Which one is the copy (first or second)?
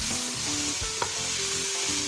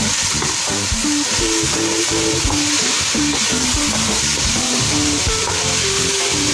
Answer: second